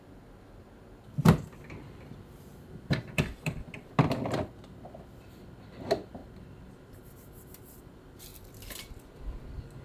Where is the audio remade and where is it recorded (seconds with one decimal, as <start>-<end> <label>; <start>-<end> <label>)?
0.0-2.5 recorded; 2.5-3.9 remade; 3.9-9.8 recorded